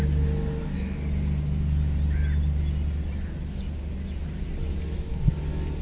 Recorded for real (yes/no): yes